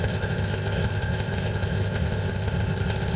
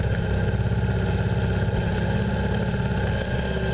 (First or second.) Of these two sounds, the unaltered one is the second